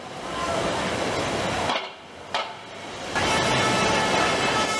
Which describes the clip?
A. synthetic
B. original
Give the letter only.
B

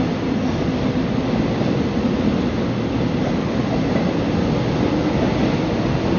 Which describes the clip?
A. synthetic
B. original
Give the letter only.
B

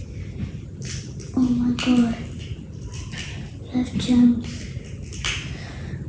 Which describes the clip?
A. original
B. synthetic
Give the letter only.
A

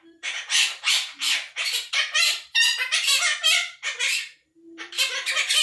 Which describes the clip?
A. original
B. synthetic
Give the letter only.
B